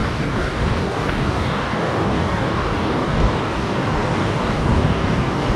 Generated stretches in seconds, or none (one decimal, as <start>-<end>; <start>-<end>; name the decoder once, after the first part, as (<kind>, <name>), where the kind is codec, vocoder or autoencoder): 0.0-5.6 (codec, DAC)

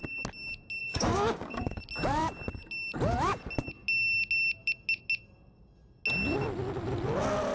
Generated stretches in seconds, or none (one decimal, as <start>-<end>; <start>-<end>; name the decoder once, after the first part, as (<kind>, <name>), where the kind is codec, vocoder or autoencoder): 0.8-1.8 (codec, DAC)

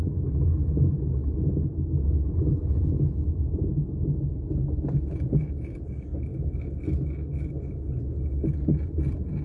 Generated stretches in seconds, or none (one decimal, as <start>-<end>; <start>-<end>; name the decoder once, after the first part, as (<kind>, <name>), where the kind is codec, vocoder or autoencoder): none

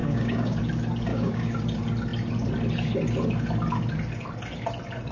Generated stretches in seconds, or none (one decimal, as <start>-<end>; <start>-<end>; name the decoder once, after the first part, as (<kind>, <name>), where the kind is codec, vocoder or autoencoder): 0.0-0.6 (codec, DAC); 1.1-1.6

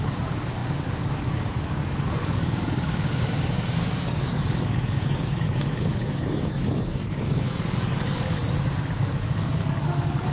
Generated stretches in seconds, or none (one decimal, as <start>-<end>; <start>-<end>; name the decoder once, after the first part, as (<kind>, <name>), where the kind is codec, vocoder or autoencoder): 0.0-8.4 (codec, DAC); 9.0-10.3

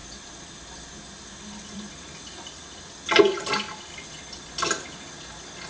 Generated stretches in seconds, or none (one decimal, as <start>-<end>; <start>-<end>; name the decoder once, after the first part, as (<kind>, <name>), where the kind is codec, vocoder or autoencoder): none